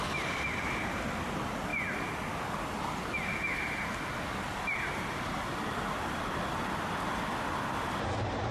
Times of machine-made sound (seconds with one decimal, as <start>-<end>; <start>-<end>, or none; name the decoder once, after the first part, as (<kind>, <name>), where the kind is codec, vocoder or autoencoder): none